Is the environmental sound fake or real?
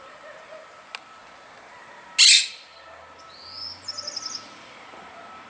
real